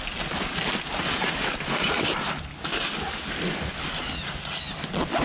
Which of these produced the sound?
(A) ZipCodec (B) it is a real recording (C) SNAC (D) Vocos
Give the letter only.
B